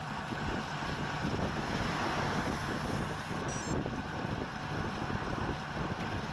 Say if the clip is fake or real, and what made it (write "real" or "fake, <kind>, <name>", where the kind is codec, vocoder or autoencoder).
real